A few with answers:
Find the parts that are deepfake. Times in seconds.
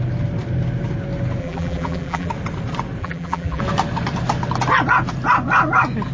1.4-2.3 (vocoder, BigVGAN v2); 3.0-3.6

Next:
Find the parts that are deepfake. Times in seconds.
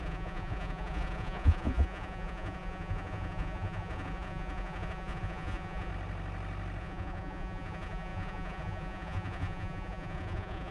0.0-5.9 (vocoder, Vocos); 6.8-10.7